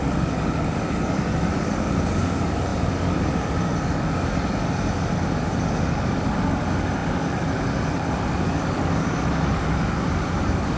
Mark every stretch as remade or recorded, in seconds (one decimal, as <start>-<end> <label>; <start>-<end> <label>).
0.0-10.8 remade